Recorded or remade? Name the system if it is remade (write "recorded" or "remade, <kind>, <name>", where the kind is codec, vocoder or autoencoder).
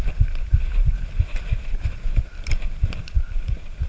remade, vocoder, BigVGAN v2